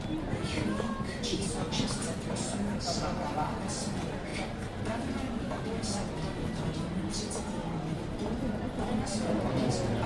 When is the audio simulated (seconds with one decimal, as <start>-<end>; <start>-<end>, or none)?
7.6-9.7